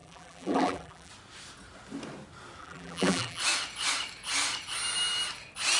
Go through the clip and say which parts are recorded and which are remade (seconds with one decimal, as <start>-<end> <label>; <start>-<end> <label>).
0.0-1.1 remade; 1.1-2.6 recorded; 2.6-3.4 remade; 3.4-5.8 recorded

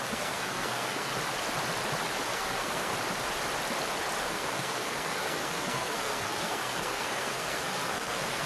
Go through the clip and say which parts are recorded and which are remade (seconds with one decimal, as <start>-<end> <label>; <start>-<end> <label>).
0.0-1.1 remade; 1.1-2.3 recorded; 2.3-2.9 remade; 2.9-4.2 recorded; 4.2-8.5 remade

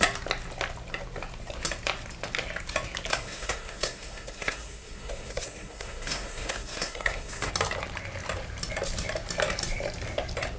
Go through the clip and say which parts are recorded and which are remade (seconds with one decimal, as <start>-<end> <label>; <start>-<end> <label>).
0.0-3.1 recorded; 3.1-7.5 remade; 7.5-10.6 recorded

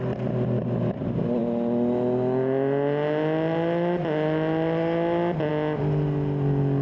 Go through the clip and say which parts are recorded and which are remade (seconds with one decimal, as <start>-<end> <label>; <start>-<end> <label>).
0.0-6.8 recorded